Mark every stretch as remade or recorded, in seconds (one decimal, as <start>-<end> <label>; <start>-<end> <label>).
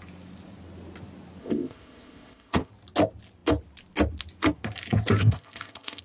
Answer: 0.0-1.4 recorded; 1.4-2.7 remade; 2.7-5.2 recorded; 5.2-6.0 remade